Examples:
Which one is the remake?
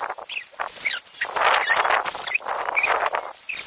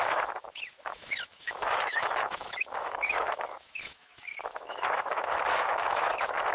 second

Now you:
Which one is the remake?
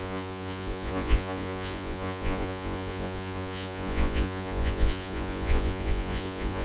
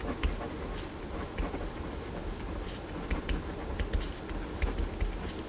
first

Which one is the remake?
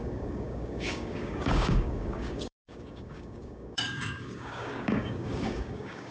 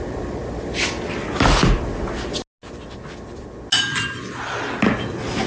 first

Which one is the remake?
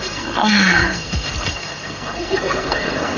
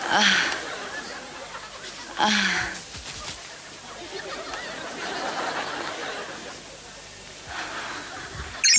first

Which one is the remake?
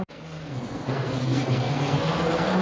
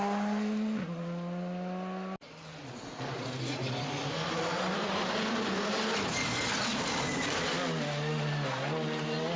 first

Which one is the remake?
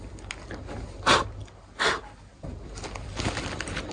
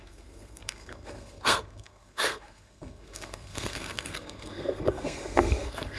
second